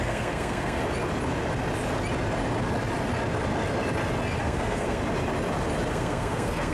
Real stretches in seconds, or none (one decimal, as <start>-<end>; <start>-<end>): 0.8-4.4; 5.0-5.9